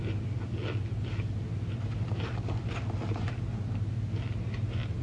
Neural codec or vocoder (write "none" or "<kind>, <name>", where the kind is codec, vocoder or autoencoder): none